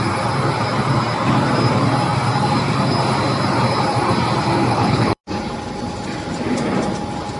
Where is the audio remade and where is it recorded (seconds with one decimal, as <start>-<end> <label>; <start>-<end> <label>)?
0.0-4.7 recorded; 4.7-5.2 remade; 5.2-7.4 recorded